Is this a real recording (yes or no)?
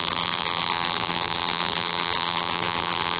no